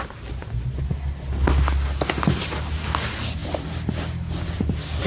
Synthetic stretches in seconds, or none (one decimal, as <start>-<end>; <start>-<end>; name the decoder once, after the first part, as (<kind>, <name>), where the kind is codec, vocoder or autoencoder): 3.4-5.1 (vocoder, BigVGAN v2)

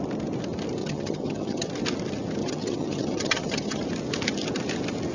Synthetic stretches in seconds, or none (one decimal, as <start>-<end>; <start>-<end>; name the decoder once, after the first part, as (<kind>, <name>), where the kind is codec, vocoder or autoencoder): 0.8-1.7 (vocoder, HiFi-GAN); 2.4-3.8

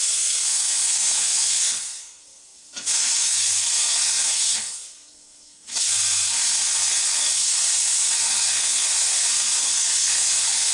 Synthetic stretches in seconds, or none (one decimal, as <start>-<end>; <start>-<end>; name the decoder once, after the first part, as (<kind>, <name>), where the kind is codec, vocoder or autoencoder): 0.0-10.7 (codec, SNAC)

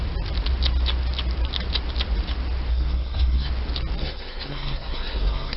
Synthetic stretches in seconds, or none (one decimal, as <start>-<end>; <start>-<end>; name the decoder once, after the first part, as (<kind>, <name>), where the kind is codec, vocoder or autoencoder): 2.7-3.5 (codec, SNAC); 4.0-5.6